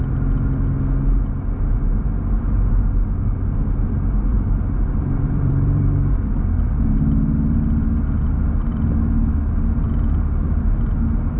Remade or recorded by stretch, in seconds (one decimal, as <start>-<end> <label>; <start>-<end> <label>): 0.0-4.3 recorded; 4.3-6.2 remade; 6.2-11.4 recorded